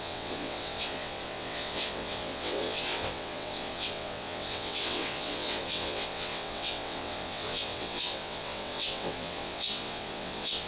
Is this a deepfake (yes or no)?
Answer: yes